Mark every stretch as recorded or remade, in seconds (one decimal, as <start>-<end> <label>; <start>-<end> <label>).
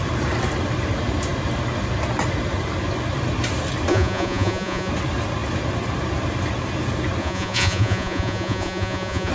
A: 0.0-3.9 recorded; 3.9-4.9 remade; 4.9-7.2 recorded; 7.2-9.3 remade